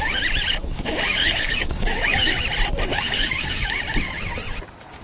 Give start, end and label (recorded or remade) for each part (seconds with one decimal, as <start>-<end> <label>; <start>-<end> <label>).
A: 0.0-0.6 recorded; 0.6-2.4 remade; 2.4-2.9 recorded; 2.9-3.7 remade; 3.7-5.0 recorded